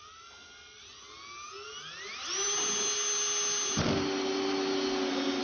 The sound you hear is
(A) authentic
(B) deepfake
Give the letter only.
A